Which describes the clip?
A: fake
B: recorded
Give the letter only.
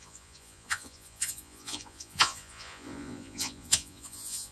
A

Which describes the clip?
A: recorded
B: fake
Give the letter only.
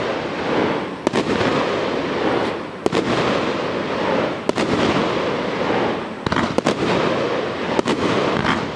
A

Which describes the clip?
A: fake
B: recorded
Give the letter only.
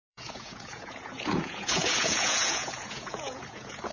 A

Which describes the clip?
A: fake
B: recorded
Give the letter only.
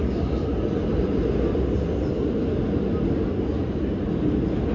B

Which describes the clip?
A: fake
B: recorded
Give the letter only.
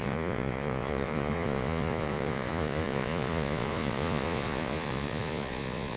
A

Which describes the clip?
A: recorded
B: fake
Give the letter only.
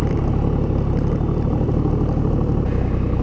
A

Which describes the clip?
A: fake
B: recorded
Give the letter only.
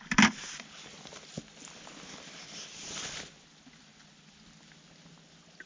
B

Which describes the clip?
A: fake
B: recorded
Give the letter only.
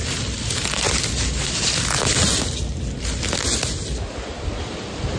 B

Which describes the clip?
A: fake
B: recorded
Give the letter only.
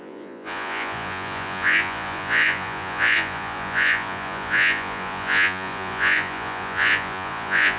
A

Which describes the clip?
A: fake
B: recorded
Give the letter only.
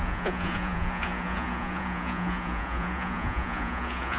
A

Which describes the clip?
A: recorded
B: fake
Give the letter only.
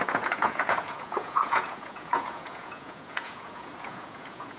B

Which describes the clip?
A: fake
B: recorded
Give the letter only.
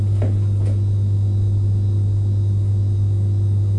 B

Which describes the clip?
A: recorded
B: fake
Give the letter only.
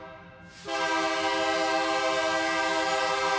A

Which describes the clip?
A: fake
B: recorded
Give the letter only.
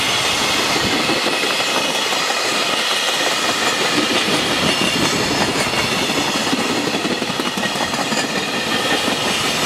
B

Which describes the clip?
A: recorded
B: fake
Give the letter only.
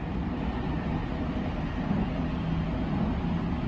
A